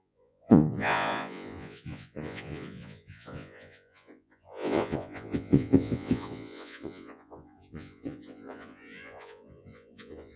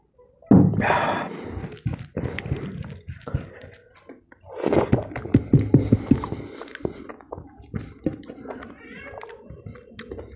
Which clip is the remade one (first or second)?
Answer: first